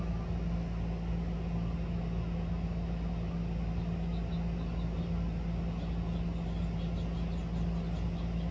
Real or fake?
real